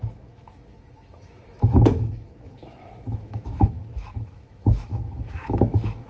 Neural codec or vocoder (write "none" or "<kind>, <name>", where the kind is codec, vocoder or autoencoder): autoencoder, DAC-VAE